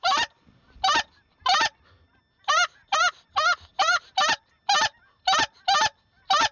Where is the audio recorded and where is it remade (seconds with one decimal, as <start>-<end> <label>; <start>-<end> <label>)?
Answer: 0.0-1.3 recorded; 1.3-2.2 remade; 2.2-3.7 recorded; 3.7-4.3 remade; 4.3-6.5 recorded